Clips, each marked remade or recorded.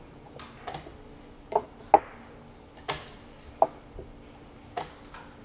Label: recorded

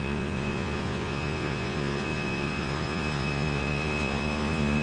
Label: remade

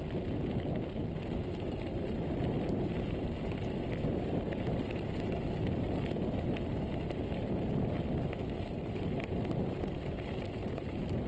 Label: recorded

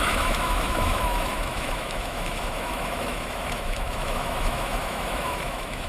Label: remade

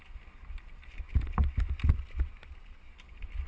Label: recorded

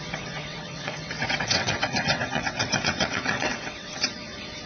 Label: remade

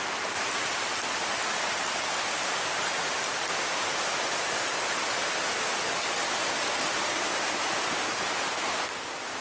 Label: recorded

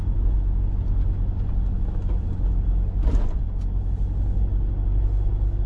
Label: recorded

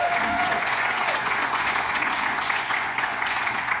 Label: remade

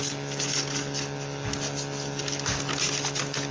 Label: recorded